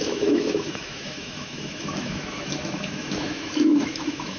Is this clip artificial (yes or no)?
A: yes